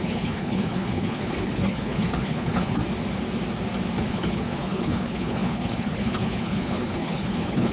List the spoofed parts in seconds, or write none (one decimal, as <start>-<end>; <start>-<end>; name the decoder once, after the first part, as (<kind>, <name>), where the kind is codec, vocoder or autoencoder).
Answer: 0.0-2.8 (codec, HILCodec); 4.1-7.7